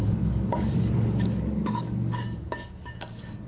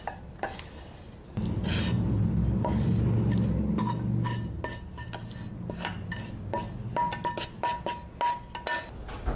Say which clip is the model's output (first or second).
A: first